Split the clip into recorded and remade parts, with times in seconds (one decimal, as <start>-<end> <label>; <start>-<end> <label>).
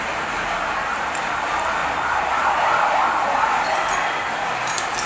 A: 0.0-5.1 recorded